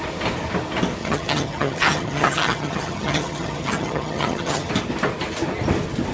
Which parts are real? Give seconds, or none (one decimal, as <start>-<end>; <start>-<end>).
0.0-1.0; 4.7-6.1